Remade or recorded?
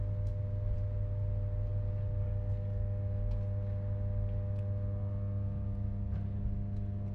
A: recorded